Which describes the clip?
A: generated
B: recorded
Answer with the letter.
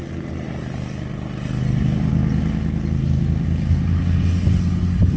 B